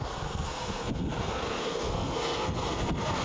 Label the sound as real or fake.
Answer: fake